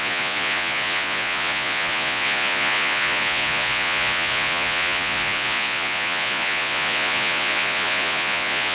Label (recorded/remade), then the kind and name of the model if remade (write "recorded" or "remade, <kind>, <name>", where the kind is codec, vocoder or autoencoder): remade, vocoder, Vocos